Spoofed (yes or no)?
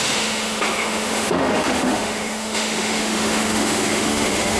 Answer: yes